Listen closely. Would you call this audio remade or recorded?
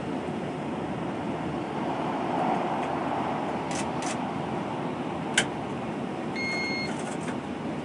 recorded